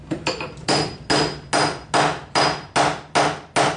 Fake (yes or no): no